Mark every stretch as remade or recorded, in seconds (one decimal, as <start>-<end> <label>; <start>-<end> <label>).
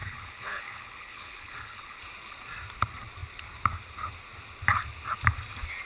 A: 0.0-2.0 remade; 2.0-5.8 recorded